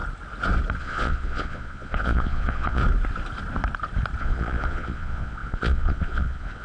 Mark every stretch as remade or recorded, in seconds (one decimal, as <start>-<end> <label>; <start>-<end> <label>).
0.0-0.8 recorded; 0.8-2.8 remade; 2.8-4.2 recorded; 4.2-6.6 remade